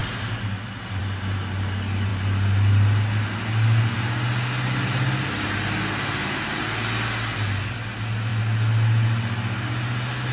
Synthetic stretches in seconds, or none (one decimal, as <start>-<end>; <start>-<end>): none